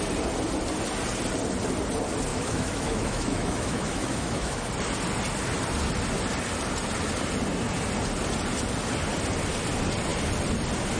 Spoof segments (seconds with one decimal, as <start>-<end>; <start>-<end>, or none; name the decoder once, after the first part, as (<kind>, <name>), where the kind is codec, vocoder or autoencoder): 2.3-4.7 (autoencoder, DAC-VAE)